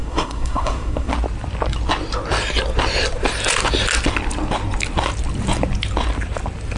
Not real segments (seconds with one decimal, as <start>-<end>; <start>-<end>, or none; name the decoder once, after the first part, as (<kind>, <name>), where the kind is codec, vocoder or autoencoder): 0.0-1.1 (codec, SNAC)